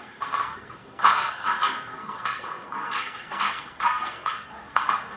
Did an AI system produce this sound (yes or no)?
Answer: yes